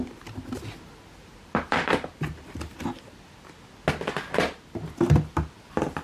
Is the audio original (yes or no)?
yes